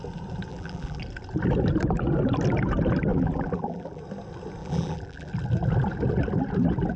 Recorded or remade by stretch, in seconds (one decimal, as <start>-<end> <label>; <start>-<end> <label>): 0.0-0.5 recorded; 0.5-1.0 remade; 1.0-3.1 recorded; 3.1-4.0 remade; 4.0-4.6 recorded; 4.6-5.3 remade; 5.3-7.0 recorded

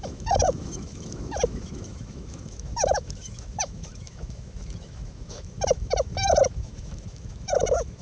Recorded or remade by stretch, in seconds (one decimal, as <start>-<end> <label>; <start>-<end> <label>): 0.0-8.0 remade

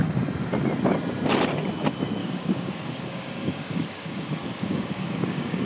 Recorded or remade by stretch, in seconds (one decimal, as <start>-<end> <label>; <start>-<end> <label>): 0.0-2.2 recorded; 2.2-5.6 remade

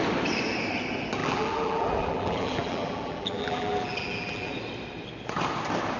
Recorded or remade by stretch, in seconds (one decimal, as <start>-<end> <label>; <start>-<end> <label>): 0.0-1.2 recorded; 1.2-4.5 remade; 4.5-6.0 recorded